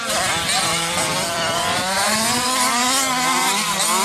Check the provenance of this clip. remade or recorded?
recorded